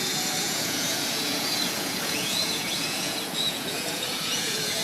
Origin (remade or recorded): remade